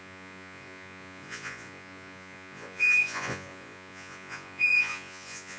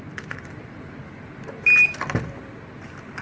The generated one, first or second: first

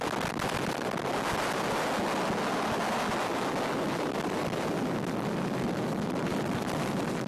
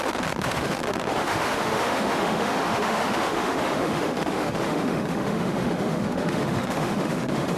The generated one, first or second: second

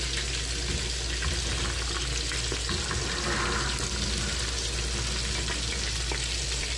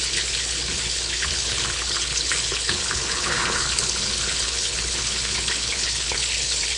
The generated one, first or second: second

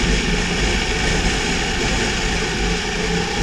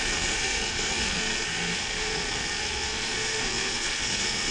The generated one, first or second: second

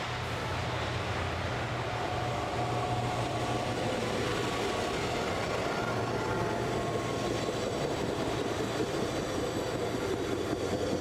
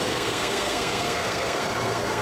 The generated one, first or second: second